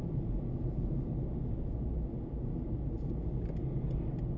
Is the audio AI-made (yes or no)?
no